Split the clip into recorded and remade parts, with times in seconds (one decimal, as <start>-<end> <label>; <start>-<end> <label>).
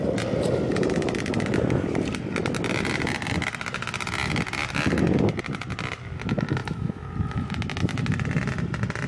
0.0-6.6 recorded; 6.6-7.1 remade; 7.1-9.1 recorded